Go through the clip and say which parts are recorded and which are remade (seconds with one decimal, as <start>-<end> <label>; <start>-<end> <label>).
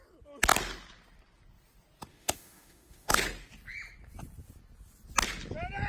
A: 0.0-2.1 recorded; 2.1-3.2 remade; 3.2-5.9 recorded